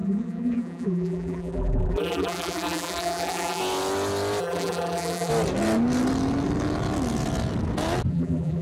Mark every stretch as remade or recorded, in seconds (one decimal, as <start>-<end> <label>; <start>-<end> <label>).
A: 0.0-3.6 remade; 3.6-4.4 recorded; 4.4-5.3 remade; 5.3-8.1 recorded; 8.1-8.6 remade